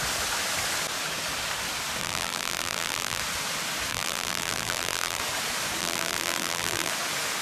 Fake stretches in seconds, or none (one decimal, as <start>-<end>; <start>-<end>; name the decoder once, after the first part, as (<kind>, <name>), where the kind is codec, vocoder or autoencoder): 2.0-3.2 (vocoder, BigVGAN v2); 3.9-5.2; 5.8-6.9